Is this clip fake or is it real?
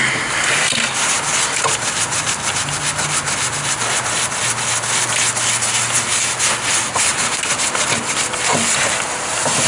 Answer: real